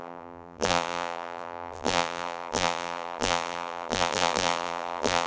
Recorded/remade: remade